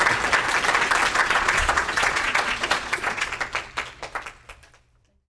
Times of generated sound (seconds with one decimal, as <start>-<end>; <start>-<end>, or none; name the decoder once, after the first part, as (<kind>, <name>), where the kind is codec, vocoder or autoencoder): 1.2-3.3 (vocoder, Vocos)